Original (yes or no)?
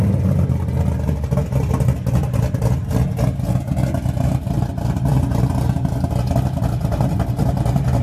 yes